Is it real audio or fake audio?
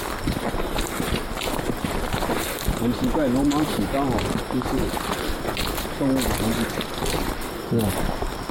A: real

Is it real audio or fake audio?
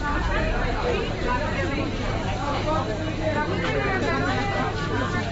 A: fake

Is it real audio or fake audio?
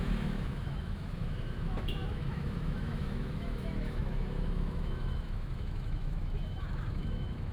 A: fake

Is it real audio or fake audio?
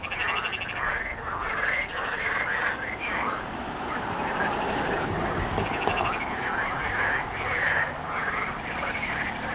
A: real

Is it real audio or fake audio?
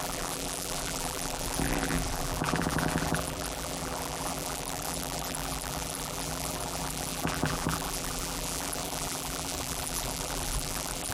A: fake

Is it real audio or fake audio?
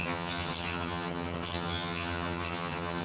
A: fake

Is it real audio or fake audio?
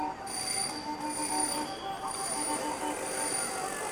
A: real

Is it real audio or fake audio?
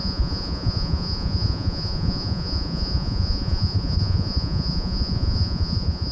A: fake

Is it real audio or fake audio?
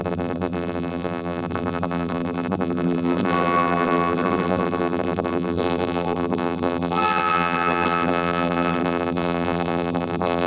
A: fake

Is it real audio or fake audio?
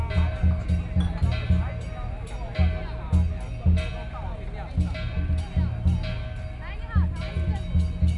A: real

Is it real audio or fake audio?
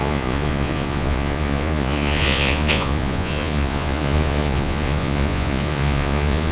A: fake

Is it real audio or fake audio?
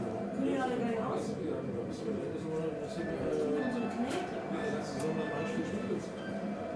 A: real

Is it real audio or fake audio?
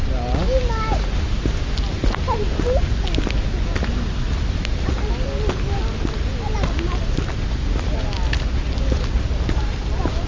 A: real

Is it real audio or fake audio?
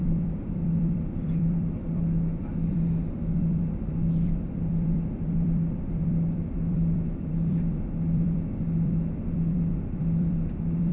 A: fake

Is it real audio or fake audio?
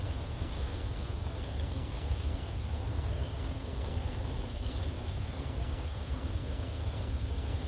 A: fake